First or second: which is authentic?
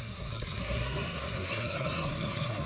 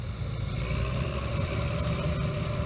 second